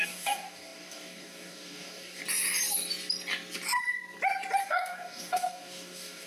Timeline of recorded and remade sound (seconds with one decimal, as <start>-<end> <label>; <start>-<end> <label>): 0.0-2.2 remade; 2.2-4.6 recorded; 4.6-6.3 remade